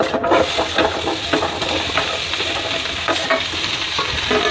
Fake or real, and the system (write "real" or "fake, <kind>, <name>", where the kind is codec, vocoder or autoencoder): real